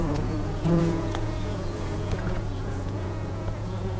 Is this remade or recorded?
remade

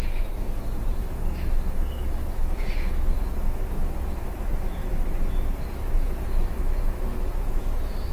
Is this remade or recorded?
remade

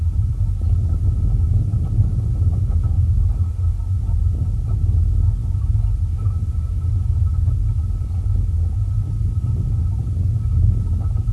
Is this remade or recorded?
recorded